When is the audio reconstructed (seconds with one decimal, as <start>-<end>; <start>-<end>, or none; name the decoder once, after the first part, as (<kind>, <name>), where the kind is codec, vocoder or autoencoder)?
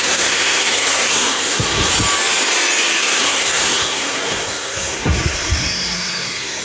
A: 0.0-1.9 (codec, SNAC); 3.0-6.6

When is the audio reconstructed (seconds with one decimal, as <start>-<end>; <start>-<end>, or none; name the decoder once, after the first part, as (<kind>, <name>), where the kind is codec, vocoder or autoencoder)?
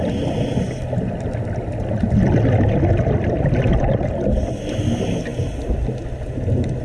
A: none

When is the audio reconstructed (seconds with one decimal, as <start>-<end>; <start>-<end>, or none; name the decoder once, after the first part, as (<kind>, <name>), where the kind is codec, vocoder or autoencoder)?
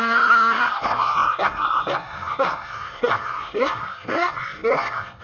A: 0.0-5.2 (codec, SNAC)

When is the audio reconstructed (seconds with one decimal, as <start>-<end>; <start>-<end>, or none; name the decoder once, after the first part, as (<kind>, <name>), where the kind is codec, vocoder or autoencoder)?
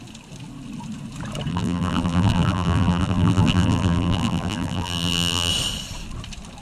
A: 1.5-5.5 (vocoder, BigVGAN v2)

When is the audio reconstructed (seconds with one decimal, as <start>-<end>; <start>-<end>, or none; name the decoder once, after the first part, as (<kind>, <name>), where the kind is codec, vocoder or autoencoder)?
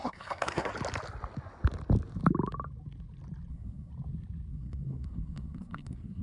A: 0.0-0.7 (codec, SNAC); 3.5-3.9; 4.5-6.2